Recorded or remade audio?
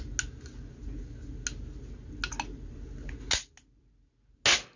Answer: recorded